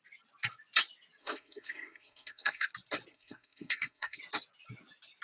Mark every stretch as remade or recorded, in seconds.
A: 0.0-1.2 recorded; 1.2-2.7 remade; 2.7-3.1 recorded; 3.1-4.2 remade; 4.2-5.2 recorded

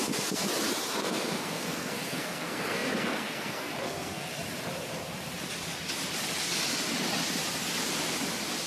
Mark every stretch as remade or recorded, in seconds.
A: 0.0-0.5 remade; 0.5-1.0 recorded; 1.0-4.3 remade; 4.3-8.7 recorded

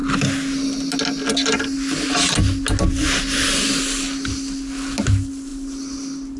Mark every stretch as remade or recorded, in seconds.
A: 0.0-6.4 recorded

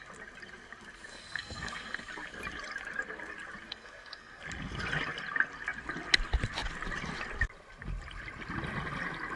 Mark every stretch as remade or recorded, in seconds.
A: 0.0-1.1 recorded; 1.1-2.0 remade; 2.0-3.7 recorded; 3.7-4.4 remade; 4.4-9.4 recorded

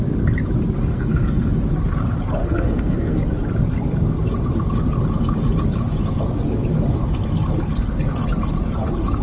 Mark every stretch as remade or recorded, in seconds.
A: 0.0-0.9 recorded; 0.9-1.5 remade; 1.5-2.4 recorded; 2.4-3.2 remade; 3.2-9.2 recorded

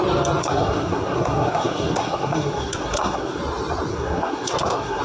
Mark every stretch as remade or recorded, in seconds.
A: 0.0-0.4 recorded; 0.4-3.4 remade; 3.4-3.9 recorded; 3.9-5.0 remade

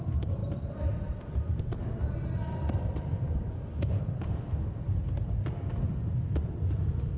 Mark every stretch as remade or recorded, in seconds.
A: 0.0-7.2 recorded